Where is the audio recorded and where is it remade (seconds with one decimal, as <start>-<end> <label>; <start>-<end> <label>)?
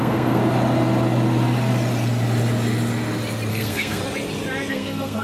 0.0-0.4 remade; 0.4-3.5 recorded; 3.5-4.0 remade; 4.0-4.7 recorded; 4.7-5.2 remade